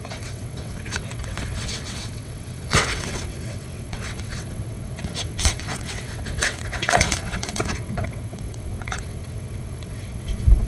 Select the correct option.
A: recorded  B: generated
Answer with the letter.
B